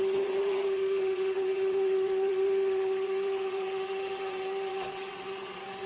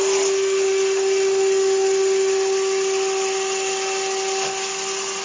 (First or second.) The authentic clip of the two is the second